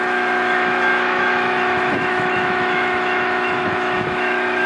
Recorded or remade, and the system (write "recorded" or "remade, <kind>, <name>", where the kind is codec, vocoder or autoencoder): remade, autoencoder, DAC-VAE